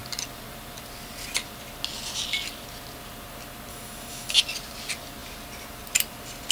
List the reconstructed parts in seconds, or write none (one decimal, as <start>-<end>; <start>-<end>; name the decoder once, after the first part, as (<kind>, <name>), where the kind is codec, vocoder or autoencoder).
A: 3.7-4.4 (autoencoder, DAC-VAE)